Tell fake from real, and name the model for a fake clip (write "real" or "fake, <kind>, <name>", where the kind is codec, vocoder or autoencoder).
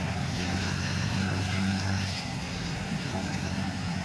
fake, codec, SNAC